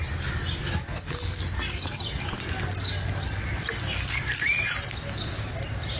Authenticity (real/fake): real